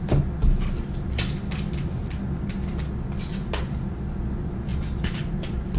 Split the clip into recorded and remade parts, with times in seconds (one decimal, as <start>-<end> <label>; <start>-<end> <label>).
0.0-4.7 recorded; 4.7-5.2 remade; 5.2-5.8 recorded

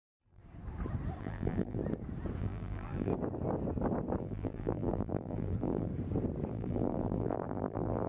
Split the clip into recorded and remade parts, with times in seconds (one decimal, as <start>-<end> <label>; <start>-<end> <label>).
0.0-0.4 remade; 0.4-1.2 recorded; 1.2-1.8 remade; 1.8-2.4 recorded; 2.4-3.1 remade; 3.1-4.2 recorded; 4.2-5.9 remade; 5.9-6.5 recorded; 6.5-8.1 remade

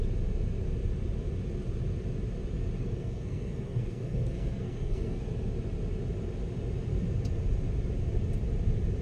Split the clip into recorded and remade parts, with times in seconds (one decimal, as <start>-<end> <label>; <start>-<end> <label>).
0.0-2.8 recorded; 2.8-5.3 remade; 5.3-9.0 recorded

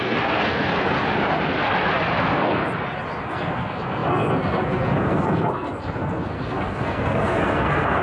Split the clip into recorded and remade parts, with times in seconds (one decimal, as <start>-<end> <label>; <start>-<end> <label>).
0.0-0.7 remade; 0.7-2.2 recorded; 2.2-2.6 remade; 2.6-3.2 recorded; 3.2-8.0 remade